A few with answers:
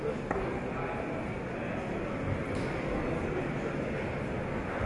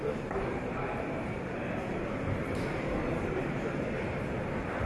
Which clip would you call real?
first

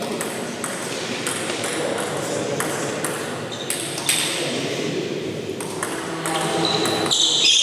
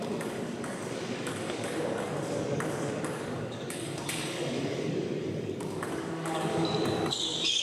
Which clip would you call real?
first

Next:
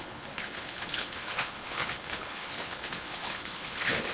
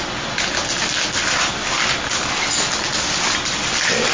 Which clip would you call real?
second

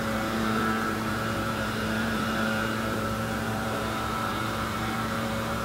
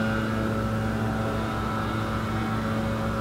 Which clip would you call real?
second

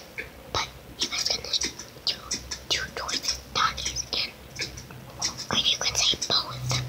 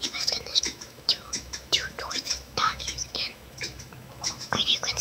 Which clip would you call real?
first